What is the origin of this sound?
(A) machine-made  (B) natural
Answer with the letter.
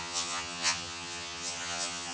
A